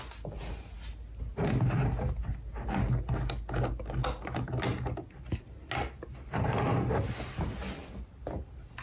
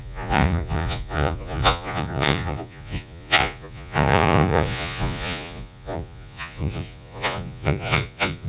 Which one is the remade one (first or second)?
second